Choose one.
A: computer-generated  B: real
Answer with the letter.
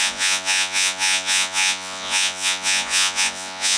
A